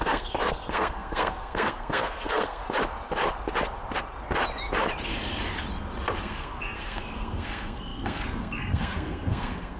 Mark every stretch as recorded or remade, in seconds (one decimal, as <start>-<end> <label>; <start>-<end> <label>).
0.0-2.6 remade; 2.6-6.2 recorded; 6.2-9.8 remade